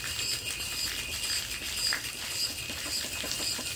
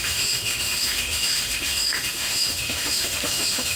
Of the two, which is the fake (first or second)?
second